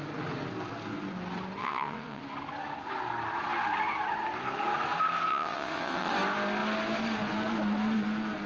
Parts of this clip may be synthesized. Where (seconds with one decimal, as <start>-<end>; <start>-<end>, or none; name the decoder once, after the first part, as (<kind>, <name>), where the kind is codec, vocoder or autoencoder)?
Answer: 1.6-2.2 (vocoder, WaveNeXt); 5.3-6.1